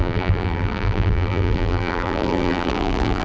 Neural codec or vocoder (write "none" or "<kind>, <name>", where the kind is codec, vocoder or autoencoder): vocoder, BigVGAN v2